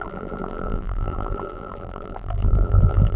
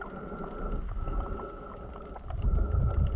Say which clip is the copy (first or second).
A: first